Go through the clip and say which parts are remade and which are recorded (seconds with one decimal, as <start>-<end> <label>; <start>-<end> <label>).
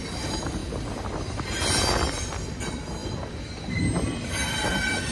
0.0-3.0 recorded; 3.0-3.8 remade; 3.8-5.1 recorded